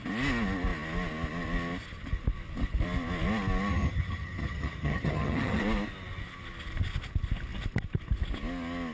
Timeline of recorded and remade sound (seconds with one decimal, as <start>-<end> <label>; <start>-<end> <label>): 0.0-3.7 recorded; 3.7-5.6 remade; 5.6-8.9 recorded